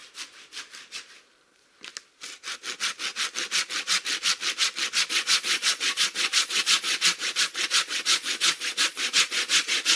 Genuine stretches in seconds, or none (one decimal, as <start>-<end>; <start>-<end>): 0.0-5.1